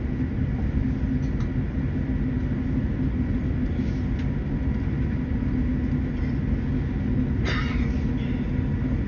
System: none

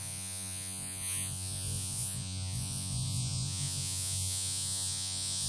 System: vocoder, Vocos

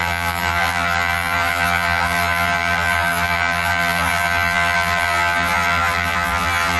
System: vocoder, BigVGAN v2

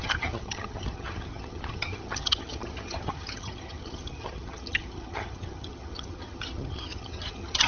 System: vocoder, HiFi-GAN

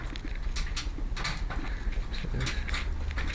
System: none